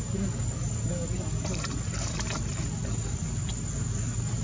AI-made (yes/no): no